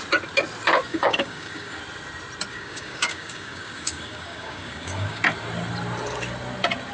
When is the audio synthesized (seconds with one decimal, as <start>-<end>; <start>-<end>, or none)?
0.9-1.8; 2.5-5.2